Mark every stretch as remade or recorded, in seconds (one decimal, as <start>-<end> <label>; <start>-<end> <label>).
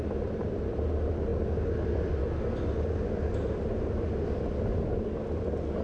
0.0-5.8 recorded